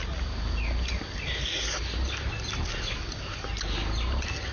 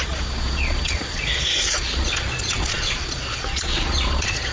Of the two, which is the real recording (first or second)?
first